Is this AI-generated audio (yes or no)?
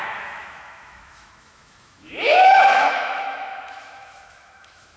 yes